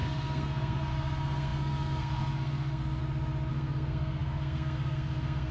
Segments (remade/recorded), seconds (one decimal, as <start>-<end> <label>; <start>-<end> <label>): 0.0-3.0 remade; 3.0-3.5 recorded; 3.5-5.5 remade